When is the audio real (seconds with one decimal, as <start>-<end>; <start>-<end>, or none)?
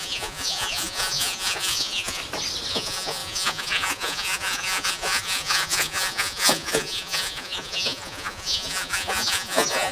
2.2-2.7